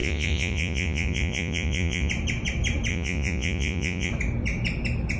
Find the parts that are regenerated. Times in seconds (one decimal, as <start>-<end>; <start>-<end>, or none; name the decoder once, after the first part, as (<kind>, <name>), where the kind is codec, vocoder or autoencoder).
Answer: 0.0-2.1 (vocoder, Vocos); 2.9-4.1